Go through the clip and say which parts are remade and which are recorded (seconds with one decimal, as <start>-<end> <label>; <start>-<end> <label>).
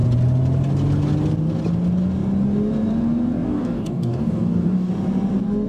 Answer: 0.0-3.5 recorded; 3.5-4.9 remade; 4.9-5.7 recorded